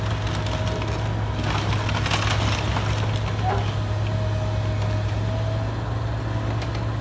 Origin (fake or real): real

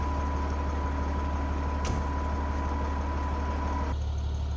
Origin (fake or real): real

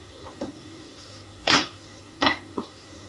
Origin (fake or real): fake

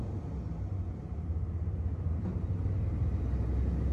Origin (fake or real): real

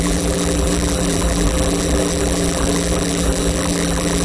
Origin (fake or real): fake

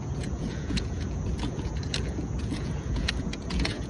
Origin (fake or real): fake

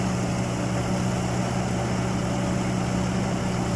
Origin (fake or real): real